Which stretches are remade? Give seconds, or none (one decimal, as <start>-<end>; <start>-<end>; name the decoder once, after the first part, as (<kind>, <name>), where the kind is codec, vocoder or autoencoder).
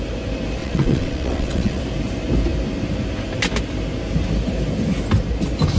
0.6-1.8 (vocoder, WaveNeXt)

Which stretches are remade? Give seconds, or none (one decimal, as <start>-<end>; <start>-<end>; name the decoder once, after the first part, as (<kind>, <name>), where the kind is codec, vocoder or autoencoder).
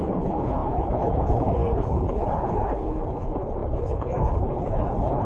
0.0-5.2 (codec, HILCodec)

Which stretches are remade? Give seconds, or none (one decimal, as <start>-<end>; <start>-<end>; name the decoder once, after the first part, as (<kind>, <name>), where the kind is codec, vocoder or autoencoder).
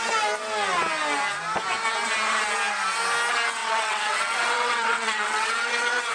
3.6-6.1 (vocoder, WaveNeXt)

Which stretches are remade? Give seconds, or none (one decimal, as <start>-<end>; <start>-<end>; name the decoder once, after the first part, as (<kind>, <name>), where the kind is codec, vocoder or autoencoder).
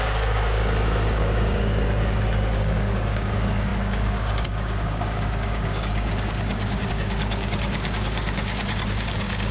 0.0-9.5 (codec, DAC)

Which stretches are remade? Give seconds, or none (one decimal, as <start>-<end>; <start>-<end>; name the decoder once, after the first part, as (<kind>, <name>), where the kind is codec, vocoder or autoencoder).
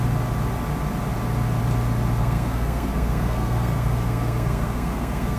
2.2-5.4 (codec, SNAC)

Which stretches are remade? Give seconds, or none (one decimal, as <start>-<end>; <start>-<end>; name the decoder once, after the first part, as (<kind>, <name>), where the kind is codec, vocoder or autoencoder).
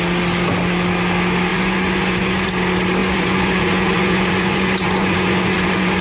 1.5-2.5 (vocoder, Vocos); 3.0-6.0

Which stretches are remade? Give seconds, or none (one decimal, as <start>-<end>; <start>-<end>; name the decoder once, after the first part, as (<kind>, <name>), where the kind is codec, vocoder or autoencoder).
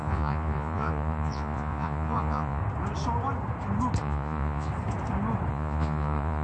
0.0-2.6 (vocoder, Vocos); 4.0-4.7; 5.5-6.4